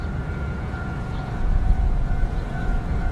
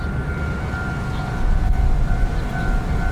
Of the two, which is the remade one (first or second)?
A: first